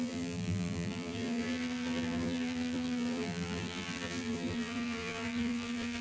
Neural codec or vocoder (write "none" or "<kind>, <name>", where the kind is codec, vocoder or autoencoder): vocoder, BigVGAN v2